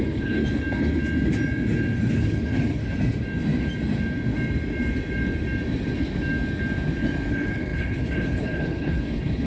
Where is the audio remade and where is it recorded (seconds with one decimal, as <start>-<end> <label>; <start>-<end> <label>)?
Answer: 0.0-0.4 remade; 0.4-2.1 recorded; 2.1-2.8 remade; 2.8-7.3 recorded; 7.3-9.5 remade